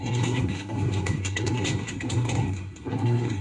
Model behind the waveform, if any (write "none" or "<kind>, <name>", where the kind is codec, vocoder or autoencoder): codec, SNAC